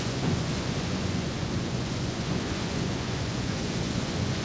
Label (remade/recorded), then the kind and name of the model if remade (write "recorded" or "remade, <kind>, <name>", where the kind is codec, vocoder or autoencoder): remade, vocoder, Vocos